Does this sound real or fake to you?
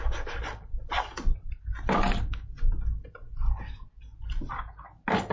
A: real